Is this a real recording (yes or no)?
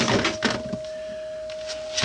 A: yes